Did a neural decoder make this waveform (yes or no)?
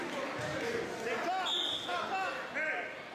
no